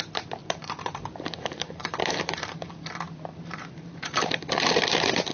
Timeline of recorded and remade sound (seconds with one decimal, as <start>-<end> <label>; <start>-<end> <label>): 0.0-0.4 recorded; 0.4-2.8 remade; 2.8-3.3 recorded; 3.3-5.3 remade